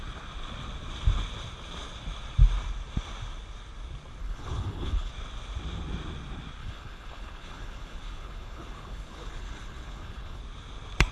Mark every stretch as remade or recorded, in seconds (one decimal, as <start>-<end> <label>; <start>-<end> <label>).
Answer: 0.0-4.2 recorded; 4.2-5.1 remade; 5.1-6.6 recorded; 6.6-10.4 remade; 10.4-11.1 recorded